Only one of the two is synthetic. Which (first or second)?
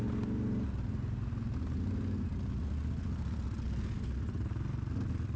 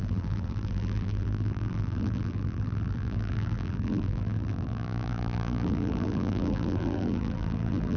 second